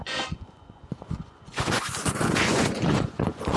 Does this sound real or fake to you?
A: fake